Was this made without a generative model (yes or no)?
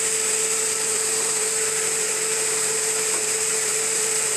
no